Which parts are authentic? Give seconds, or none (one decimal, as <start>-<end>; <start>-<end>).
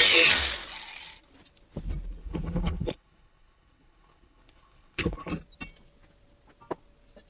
0.0-2.2; 5.3-7.3